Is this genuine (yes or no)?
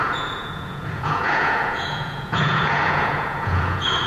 no